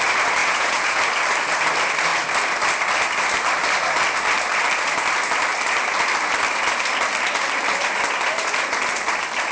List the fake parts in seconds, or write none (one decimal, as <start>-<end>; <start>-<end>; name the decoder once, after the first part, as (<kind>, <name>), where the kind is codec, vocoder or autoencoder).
0.4-1.0 (vocoder, Vocos)